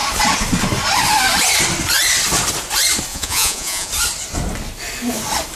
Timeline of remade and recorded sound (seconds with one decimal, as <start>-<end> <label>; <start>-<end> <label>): 0.0-3.1 recorded; 3.1-3.9 remade; 3.9-5.6 recorded